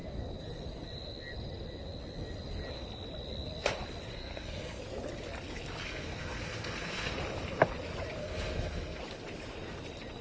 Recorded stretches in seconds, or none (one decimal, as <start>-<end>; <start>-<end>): 0.0-4.1; 4.8-5.8; 7.1-8.2; 9.0-10.2